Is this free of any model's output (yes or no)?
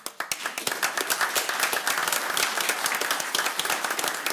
yes